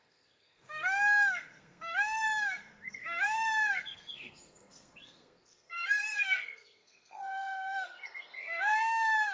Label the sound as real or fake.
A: fake